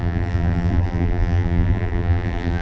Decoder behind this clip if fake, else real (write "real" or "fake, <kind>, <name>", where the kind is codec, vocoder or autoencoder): fake, vocoder, BigVGAN v2